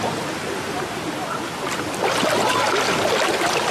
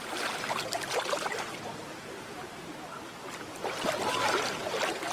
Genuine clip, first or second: second